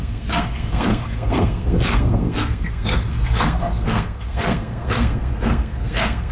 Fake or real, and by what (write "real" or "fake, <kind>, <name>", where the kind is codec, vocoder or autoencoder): fake, codec, SNAC